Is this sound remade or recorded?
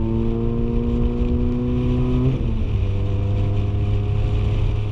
recorded